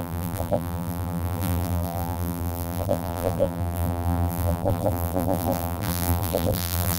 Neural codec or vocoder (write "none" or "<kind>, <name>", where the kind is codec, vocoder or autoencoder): vocoder, BigVGAN v2